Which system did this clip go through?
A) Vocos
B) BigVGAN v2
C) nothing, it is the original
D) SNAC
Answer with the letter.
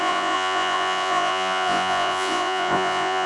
A